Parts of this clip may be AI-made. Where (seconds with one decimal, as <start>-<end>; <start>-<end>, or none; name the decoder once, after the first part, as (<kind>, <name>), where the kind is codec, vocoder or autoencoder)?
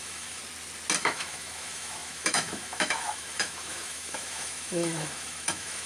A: 0.0-0.4 (autoencoder, DAC-VAE); 1.0-5.9